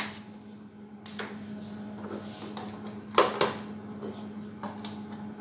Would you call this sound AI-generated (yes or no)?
no